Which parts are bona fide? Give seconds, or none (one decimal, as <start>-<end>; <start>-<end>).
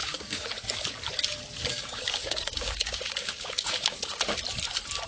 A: 0.5-1.7; 4.2-5.1